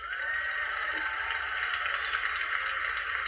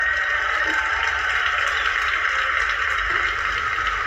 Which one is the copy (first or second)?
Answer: second